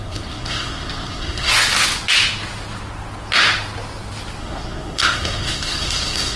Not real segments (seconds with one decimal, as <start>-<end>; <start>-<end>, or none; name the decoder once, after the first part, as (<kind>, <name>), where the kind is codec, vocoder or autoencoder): 0.0-1.5 (codec, SNAC); 4.4-6.4